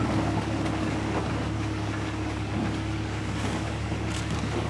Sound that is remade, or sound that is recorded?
remade